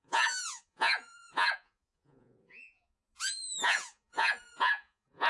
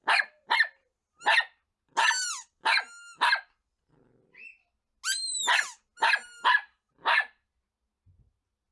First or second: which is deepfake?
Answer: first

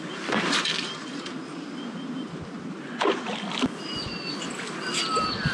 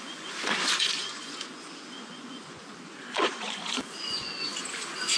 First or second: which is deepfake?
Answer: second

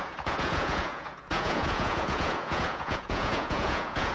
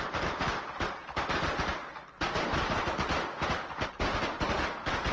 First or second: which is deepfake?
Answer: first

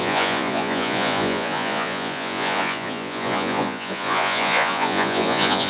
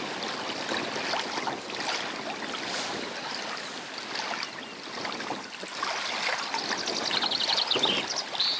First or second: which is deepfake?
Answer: first